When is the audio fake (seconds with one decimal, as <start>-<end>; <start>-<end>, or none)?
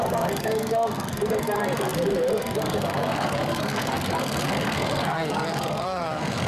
0.0-6.5